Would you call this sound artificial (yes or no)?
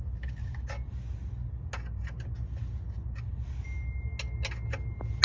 no